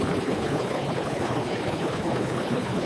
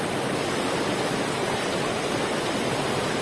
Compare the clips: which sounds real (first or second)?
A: second